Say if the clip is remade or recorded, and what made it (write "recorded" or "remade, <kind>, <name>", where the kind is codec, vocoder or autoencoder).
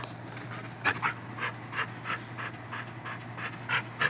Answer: recorded